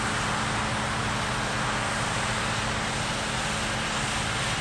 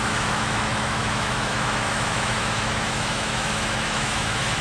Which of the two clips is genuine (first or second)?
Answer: first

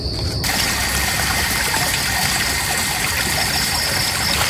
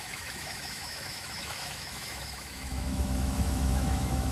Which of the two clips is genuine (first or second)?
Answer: first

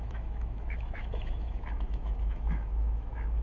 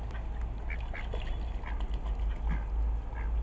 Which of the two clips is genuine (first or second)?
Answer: second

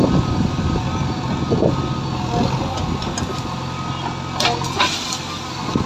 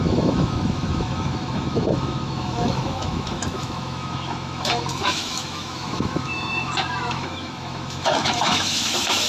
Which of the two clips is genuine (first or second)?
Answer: first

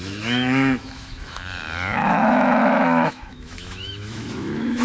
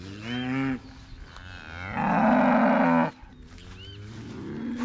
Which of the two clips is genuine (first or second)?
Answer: second